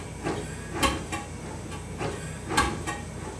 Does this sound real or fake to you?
real